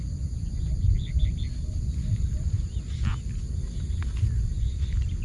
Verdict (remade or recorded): recorded